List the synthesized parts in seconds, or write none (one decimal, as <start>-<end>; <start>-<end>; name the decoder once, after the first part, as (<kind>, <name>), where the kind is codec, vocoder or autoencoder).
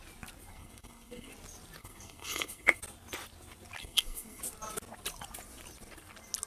0.5-1.3 (codec, SNAC); 1.8-2.8; 3.8-4.4